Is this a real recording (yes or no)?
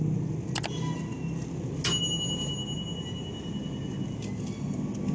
yes